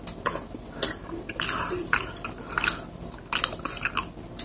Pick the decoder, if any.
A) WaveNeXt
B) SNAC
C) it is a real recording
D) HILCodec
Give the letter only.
C